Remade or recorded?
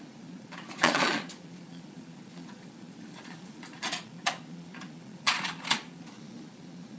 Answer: remade